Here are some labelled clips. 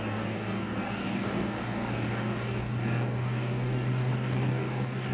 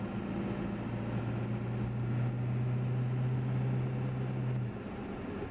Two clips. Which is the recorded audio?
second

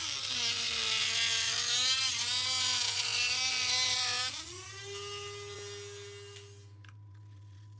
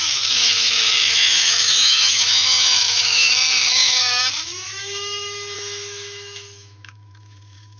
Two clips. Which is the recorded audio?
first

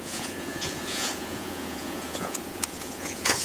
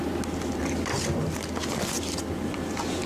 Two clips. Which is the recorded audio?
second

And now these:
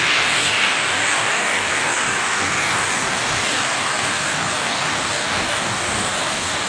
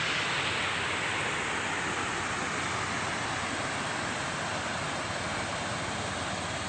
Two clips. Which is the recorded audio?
second